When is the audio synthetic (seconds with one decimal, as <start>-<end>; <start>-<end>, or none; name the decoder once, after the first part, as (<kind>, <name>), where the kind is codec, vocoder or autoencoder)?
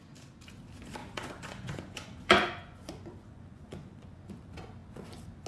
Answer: 1.0-4.3 (vocoder, Vocos)